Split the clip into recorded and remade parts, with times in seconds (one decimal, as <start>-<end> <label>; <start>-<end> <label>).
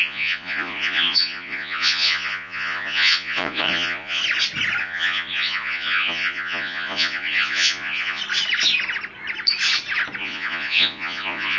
0.0-4.2 remade; 4.2-4.8 recorded; 4.8-8.2 remade; 8.2-10.2 recorded; 10.2-11.6 remade